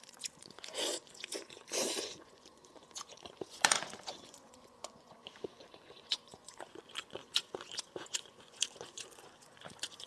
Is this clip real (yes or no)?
no